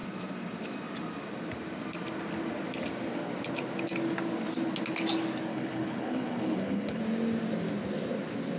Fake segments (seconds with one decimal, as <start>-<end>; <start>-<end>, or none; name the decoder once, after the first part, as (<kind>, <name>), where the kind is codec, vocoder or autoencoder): 5.5-7.0 (codec, HILCodec)